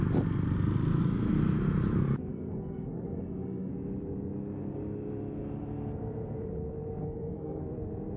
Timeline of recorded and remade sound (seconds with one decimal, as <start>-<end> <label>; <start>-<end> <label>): 0.0-2.3 recorded; 2.3-3.7 remade; 3.7-7.0 recorded; 7.0-7.6 remade; 7.6-8.2 recorded